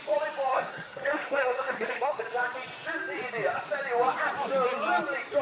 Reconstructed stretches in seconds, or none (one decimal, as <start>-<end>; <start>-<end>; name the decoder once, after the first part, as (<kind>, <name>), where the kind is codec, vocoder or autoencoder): 0.5-2.2 (codec, SNAC)